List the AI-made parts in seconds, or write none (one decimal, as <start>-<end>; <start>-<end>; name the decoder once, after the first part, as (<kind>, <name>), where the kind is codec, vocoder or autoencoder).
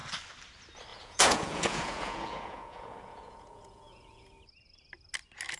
0.9-4.3 (vocoder, Vocos)